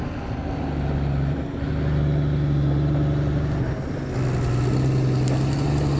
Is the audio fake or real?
real